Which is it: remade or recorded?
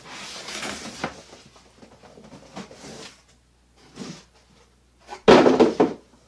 recorded